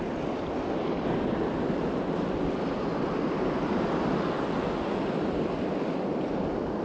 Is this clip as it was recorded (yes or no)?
yes